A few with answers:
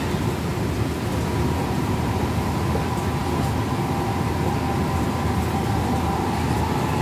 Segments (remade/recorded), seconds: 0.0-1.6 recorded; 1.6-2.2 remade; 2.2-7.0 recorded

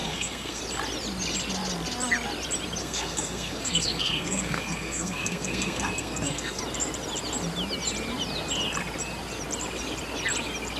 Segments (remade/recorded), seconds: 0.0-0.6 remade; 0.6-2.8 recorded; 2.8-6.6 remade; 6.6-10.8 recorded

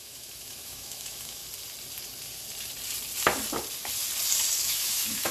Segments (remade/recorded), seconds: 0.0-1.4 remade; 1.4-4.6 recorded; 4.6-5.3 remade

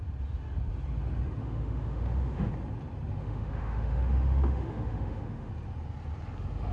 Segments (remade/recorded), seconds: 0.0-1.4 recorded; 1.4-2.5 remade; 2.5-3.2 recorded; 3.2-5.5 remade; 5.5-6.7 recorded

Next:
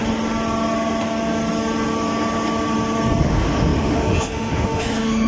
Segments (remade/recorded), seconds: 0.0-3.2 recorded; 3.2-5.3 remade